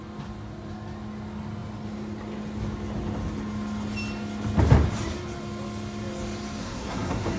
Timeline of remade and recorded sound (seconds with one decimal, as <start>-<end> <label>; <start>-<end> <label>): 0.0-6.6 recorded; 6.6-7.4 remade